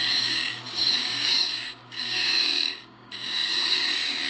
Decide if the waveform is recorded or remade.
remade